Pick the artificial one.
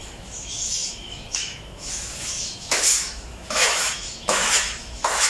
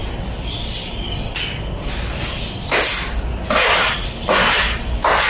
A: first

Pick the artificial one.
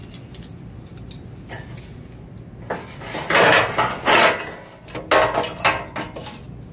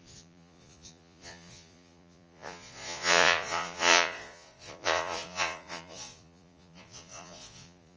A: second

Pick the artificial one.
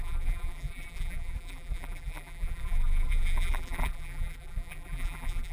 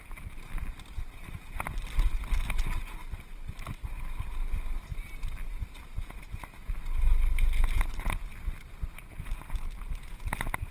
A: first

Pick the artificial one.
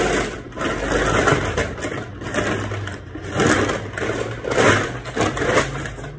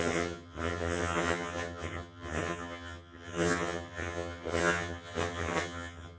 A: second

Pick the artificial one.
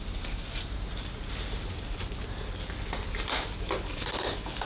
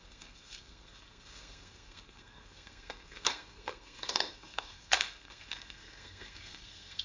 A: second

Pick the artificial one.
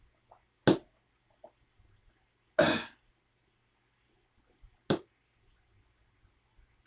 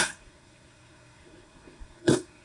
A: second